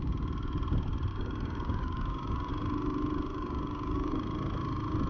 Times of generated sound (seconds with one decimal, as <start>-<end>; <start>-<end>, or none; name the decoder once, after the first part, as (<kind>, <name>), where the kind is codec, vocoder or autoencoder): 1.1-2.5 (codec, DAC); 3.3-4.2